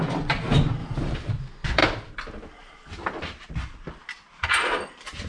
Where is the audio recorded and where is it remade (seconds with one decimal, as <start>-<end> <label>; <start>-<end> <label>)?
0.0-0.8 recorded; 0.8-1.3 remade; 1.3-5.3 recorded